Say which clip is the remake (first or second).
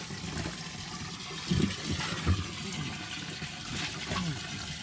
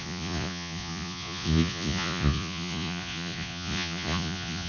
second